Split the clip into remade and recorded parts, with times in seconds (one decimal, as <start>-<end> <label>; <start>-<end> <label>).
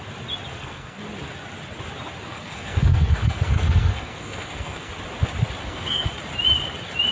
0.0-0.5 recorded; 0.5-1.0 remade; 1.0-2.2 recorded; 2.2-4.9 remade; 4.9-5.6 recorded; 5.6-6.1 remade; 6.1-7.1 recorded